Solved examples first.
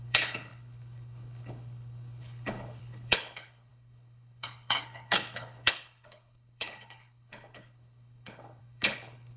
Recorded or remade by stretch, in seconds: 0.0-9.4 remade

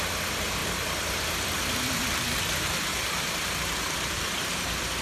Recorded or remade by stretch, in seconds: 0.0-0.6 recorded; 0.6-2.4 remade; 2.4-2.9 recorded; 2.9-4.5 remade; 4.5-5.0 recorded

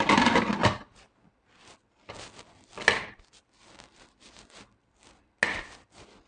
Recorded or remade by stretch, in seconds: 0.0-6.3 recorded

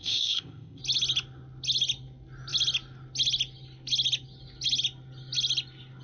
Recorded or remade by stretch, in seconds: 0.0-0.8 remade; 0.8-6.0 recorded

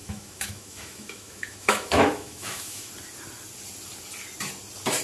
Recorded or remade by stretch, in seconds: 0.0-2.9 remade; 2.9-5.0 recorded